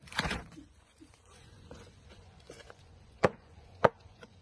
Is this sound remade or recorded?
remade